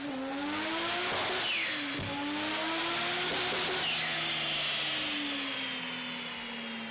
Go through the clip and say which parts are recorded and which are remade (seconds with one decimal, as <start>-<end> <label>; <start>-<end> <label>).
0.0-6.9 recorded

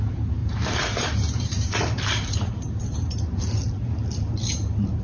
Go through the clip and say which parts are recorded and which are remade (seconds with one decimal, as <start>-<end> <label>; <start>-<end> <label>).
0.0-0.4 recorded; 0.4-3.4 remade; 3.4-5.0 recorded

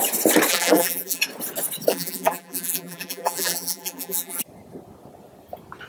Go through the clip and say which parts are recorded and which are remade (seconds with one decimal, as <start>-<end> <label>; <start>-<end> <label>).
0.0-0.5 recorded; 0.5-1.2 remade; 1.2-1.9 recorded; 1.9-4.4 remade; 4.4-5.9 recorded